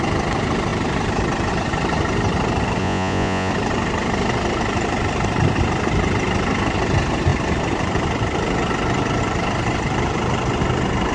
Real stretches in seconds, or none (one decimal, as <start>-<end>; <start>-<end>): 0.0-2.8; 3.5-11.1